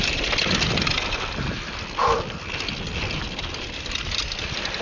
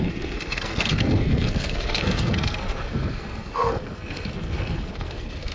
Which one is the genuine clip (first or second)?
first